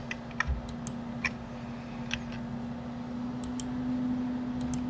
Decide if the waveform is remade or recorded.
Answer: recorded